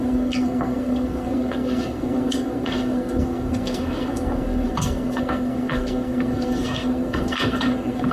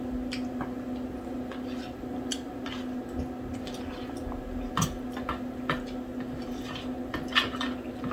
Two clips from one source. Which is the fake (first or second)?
first